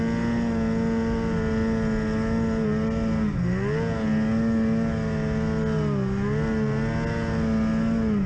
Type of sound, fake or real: real